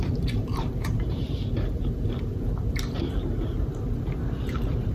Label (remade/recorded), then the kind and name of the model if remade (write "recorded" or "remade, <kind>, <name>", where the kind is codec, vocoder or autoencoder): remade, vocoder, BigVGAN v2